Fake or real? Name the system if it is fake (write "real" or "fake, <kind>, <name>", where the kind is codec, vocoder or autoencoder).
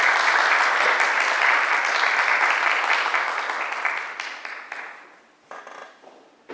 real